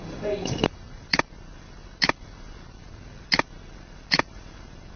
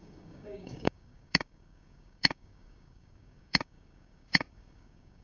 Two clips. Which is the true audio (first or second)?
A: first